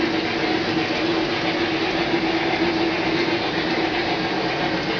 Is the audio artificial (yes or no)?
no